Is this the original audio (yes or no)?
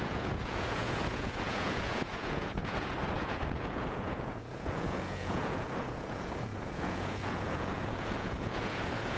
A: no